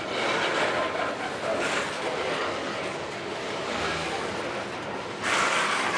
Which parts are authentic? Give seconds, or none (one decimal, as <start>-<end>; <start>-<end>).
0.0-1.5; 4.3-5.3